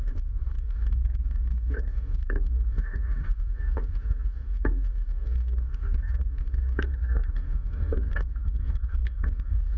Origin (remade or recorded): remade